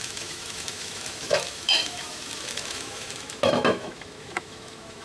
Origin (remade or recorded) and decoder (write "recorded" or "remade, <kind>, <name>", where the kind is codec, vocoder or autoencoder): remade, autoencoder, DAC-VAE